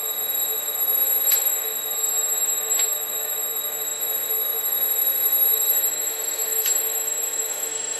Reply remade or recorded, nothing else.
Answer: remade